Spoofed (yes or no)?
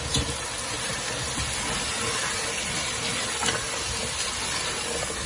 no